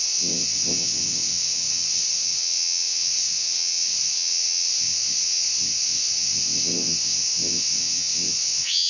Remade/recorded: remade